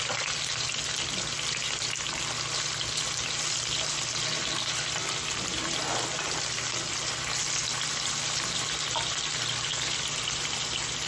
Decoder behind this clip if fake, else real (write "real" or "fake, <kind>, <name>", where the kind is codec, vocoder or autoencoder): real